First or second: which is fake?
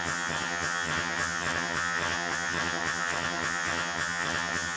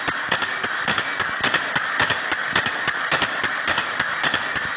first